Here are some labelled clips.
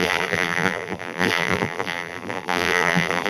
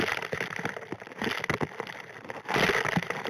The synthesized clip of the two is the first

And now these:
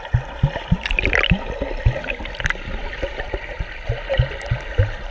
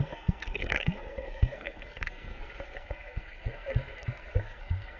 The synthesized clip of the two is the second